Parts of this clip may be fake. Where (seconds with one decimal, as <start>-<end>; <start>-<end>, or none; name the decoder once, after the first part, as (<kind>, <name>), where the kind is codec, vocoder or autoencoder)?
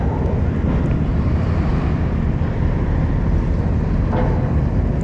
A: none